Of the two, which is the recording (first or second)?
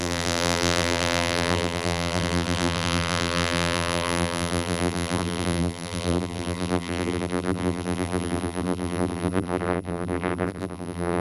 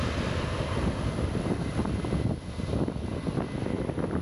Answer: second